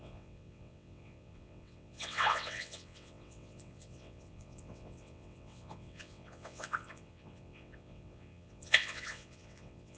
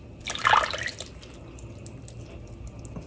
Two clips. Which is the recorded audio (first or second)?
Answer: second